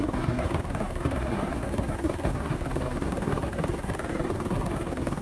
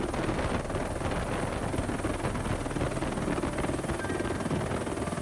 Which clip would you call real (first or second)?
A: second